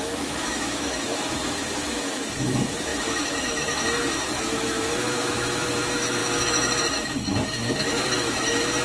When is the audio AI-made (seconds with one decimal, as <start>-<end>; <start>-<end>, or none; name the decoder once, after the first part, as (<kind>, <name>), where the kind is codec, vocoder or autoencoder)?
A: 0.0-8.8 (autoencoder, DAC-VAE)